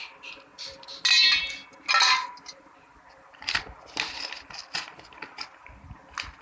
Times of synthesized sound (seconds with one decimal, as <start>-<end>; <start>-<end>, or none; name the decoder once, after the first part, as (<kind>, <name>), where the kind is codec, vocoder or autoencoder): none

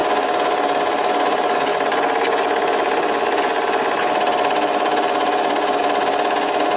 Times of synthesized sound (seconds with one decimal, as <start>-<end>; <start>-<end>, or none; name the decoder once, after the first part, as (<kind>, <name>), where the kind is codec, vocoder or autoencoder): 1.7-5.8 (vocoder, BigVGAN v2)

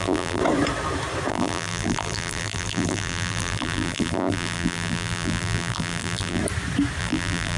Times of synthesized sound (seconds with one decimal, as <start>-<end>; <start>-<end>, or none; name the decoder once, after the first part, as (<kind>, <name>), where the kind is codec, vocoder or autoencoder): 0.0-0.4 (vocoder, BigVGAN v2); 1.3-6.4; 7.0-7.6

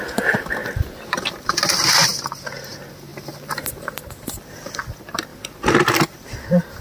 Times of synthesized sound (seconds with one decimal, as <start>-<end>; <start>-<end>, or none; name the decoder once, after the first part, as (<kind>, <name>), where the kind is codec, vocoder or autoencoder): 0.0-0.6 (vocoder, BigVGAN v2); 1.3-2.1; 2.7-5.3; 5.8-6.8

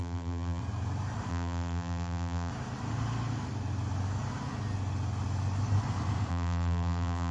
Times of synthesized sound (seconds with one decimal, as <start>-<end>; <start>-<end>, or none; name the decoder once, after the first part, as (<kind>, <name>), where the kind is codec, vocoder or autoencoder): 0.0-0.6 (vocoder, BigVGAN v2); 1.3-2.5; 6.3-7.3

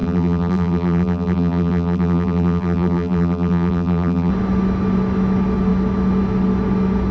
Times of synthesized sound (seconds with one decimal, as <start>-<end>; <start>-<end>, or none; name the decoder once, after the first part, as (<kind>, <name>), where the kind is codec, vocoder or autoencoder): 0.0-4.3 (vocoder, BigVGAN v2)

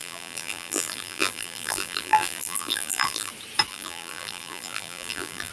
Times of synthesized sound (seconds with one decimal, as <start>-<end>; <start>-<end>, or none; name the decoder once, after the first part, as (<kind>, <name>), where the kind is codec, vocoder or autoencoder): 0.0-3.3 (vocoder, BigVGAN v2); 3.7-5.5

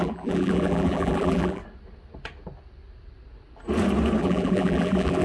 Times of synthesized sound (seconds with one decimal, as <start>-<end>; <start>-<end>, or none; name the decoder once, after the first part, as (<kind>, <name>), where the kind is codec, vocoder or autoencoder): 0.0-1.6 (vocoder, BigVGAN v2); 4.2-5.2